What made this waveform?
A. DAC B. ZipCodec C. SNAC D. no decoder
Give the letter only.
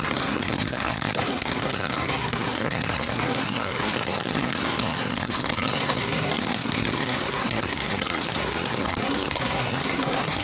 C